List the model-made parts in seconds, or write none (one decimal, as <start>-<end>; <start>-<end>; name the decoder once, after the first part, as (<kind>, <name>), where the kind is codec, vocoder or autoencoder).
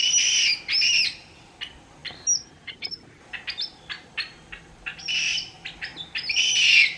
none